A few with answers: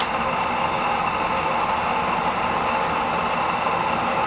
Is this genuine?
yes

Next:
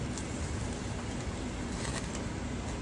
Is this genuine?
yes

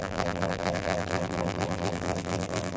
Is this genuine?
no